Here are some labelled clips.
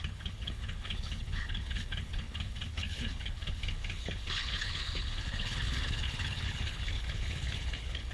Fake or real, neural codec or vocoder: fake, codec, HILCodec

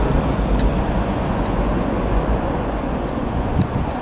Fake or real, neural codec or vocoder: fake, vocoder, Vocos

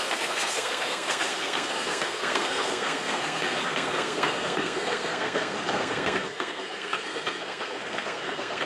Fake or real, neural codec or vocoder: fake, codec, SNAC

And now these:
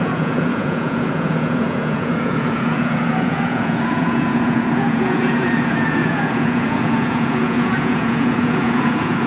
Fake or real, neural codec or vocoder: fake, vocoder, Vocos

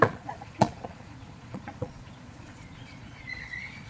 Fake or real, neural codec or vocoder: fake, vocoder, Vocos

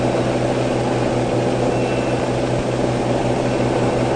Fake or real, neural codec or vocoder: real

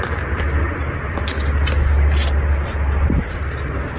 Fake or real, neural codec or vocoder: real